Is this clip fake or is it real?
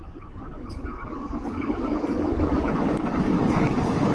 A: fake